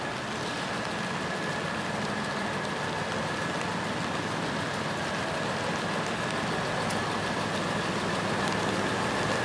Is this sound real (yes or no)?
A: yes